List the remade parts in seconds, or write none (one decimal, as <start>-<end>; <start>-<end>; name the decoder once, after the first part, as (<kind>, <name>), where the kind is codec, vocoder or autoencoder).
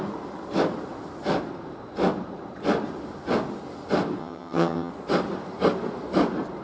4.2-4.9 (vocoder, HiFi-GAN)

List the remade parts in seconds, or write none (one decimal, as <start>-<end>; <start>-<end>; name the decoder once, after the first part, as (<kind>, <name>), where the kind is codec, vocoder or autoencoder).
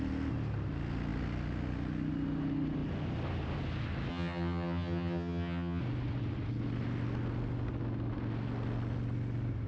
4.1-5.8 (vocoder, HiFi-GAN)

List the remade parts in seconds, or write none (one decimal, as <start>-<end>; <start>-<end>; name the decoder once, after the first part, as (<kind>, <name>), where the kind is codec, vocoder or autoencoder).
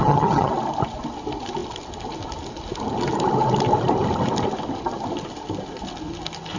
0.0-0.5 (vocoder, HiFi-GAN)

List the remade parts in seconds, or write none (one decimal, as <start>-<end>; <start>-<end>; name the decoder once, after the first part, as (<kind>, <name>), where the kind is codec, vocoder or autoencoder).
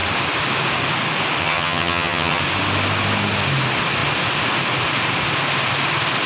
1.4-2.4 (vocoder, HiFi-GAN)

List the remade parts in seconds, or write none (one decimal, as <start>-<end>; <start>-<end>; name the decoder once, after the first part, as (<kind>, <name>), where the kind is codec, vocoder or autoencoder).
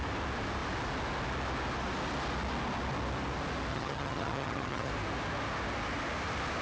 3.7-4.9 (vocoder, HiFi-GAN)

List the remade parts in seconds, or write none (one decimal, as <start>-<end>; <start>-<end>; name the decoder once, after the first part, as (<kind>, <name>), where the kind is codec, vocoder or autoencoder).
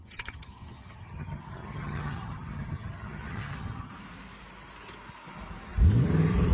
0.0-3.9 (vocoder, HiFi-GAN)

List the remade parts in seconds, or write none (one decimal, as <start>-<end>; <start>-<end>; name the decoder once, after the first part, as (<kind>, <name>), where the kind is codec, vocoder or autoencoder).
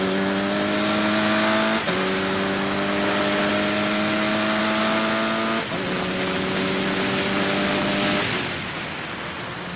none